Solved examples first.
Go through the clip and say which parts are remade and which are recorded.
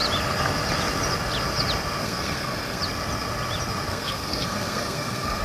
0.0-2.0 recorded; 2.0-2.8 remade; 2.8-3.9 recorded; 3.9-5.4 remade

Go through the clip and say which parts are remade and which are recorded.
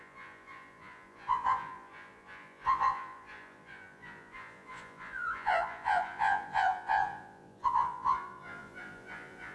0.0-9.5 remade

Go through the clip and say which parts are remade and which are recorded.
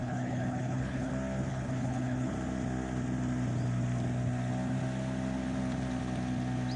0.0-1.1 remade; 1.1-1.5 recorded; 1.5-2.3 remade; 2.3-6.8 recorded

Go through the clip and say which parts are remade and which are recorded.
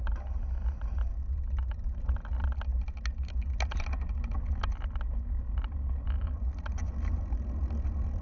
0.0-8.2 recorded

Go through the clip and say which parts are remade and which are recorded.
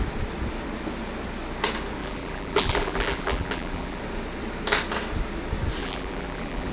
0.0-2.0 recorded; 2.0-4.0 remade; 4.0-5.8 recorded; 5.8-6.7 remade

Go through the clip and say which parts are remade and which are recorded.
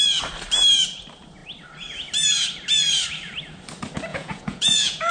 0.0-4.1 recorded; 4.1-5.1 remade